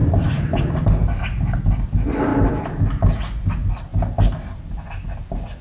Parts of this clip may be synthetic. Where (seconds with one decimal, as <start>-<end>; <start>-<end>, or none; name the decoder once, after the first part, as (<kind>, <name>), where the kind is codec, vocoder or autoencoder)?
0.0-0.6 (vocoder, BigVGAN v2); 2.3-2.9; 3.9-4.8